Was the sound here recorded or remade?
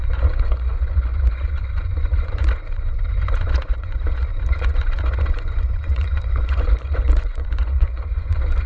remade